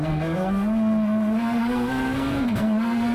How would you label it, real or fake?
fake